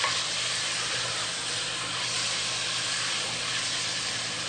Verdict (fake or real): real